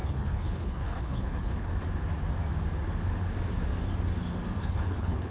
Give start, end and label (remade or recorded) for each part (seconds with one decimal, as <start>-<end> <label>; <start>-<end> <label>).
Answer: 0.0-1.7 remade; 1.7-4.6 recorded; 4.6-5.3 remade